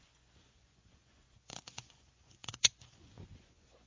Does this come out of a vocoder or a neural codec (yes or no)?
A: yes